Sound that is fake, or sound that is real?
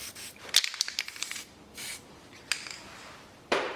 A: real